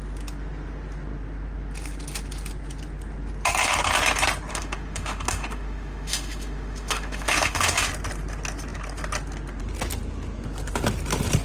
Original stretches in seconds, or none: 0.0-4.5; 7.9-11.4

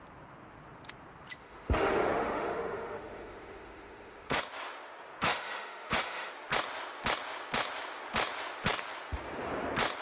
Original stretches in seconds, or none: 0.0-1.4; 4.4-5.2; 6.3-10.0

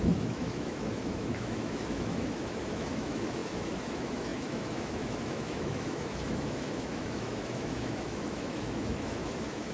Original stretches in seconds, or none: none

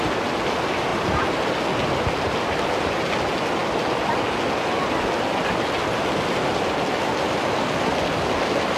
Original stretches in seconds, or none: 0.0-8.8

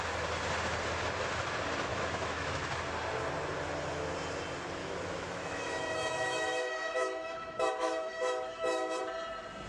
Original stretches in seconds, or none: 0.0-1.9; 2.6-4.8; 9.0-9.7

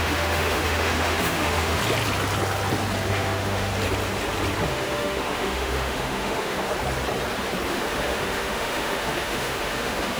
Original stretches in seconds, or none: 1.8-3.1; 3.7-4.7; 6.7-7.7